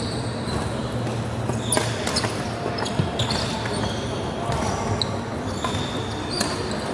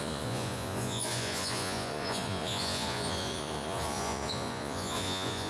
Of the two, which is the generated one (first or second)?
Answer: second